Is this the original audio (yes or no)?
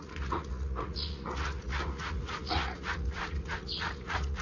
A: no